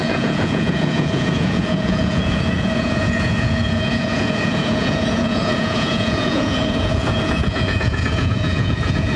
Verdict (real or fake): fake